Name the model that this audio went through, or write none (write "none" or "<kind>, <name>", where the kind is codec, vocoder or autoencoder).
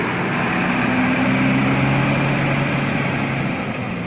none